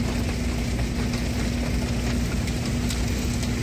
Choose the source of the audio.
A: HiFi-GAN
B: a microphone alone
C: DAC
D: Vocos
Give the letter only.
B